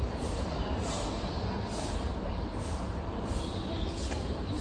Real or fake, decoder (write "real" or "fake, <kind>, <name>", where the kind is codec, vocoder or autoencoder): real